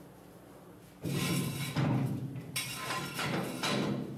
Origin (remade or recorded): recorded